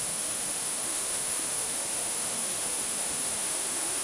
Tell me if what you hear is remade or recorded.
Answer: remade